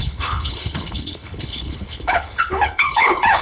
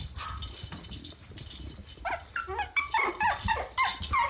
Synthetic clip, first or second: first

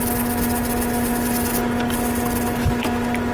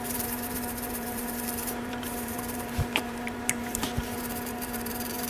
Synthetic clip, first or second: second